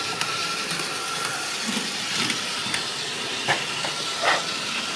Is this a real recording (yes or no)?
no